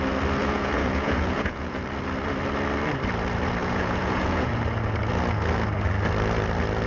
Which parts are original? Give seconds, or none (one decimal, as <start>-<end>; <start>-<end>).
0.0-0.4; 1.8-3.6; 4.5-6.9